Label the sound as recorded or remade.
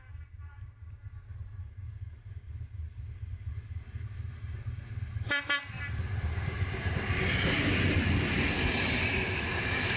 recorded